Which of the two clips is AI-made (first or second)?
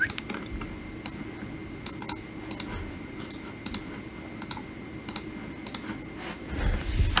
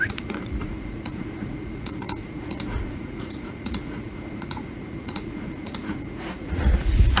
second